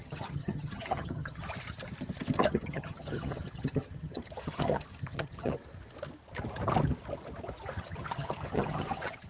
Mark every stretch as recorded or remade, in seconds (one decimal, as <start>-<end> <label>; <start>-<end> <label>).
0.0-1.4 remade; 1.4-2.4 recorded; 2.4-5.6 remade; 5.6-7.8 recorded; 7.8-9.3 remade